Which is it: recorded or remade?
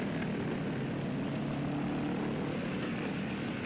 recorded